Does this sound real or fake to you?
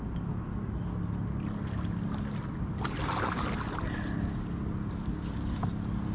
real